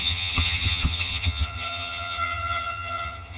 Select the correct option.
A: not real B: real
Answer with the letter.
A